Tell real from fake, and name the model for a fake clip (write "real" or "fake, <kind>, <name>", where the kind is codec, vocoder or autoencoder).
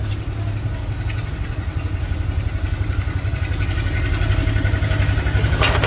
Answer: real